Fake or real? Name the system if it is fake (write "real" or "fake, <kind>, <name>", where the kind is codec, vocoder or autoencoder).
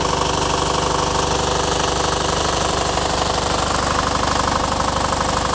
real